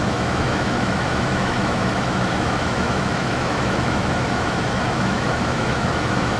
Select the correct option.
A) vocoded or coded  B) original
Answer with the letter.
A